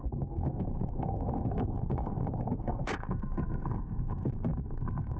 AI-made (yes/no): yes